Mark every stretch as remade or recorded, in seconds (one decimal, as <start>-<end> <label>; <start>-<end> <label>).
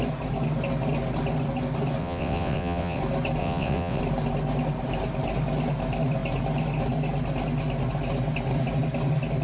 0.0-2.0 recorded; 2.0-3.0 remade; 3.0-3.4 recorded; 3.4-4.0 remade; 4.0-9.4 recorded